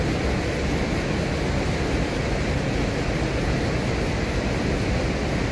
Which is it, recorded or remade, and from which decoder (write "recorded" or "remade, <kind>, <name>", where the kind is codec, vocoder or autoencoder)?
recorded